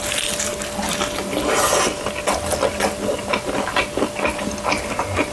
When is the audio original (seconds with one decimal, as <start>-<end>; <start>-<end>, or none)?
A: 0.0-5.3